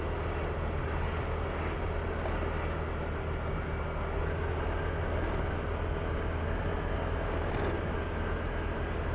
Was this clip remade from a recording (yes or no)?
no